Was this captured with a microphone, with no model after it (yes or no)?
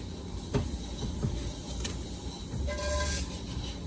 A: yes